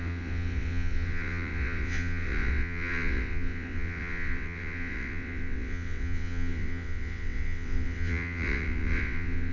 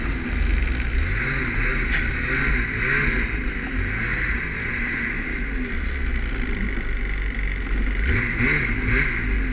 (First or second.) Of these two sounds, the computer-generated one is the first